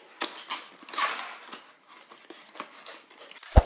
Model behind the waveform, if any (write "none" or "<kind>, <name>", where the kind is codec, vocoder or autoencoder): none